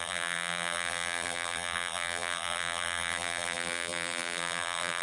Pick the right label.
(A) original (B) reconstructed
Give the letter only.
B